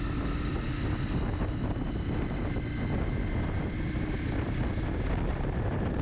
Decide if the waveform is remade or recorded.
recorded